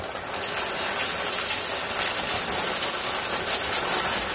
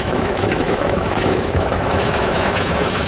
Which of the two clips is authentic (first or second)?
first